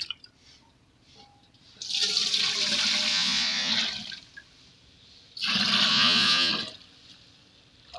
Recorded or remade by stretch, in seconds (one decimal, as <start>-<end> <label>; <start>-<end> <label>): 0.0-3.1 recorded; 3.1-3.7 remade; 3.7-5.9 recorded; 5.9-6.5 remade; 6.5-8.0 recorded